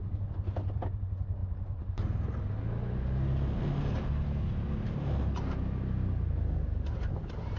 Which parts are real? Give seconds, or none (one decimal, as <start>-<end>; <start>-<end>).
0.0-7.6